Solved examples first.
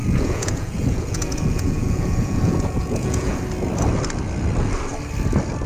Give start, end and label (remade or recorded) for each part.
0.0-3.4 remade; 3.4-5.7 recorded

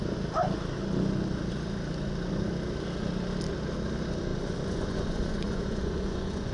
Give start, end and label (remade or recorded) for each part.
0.0-4.3 recorded; 4.3-6.5 remade